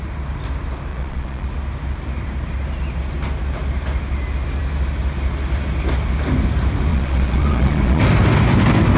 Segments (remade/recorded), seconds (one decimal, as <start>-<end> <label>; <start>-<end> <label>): 0.0-0.9 recorded; 0.9-1.5 remade; 1.5-6.9 recorded; 6.9-8.0 remade; 8.0-9.0 recorded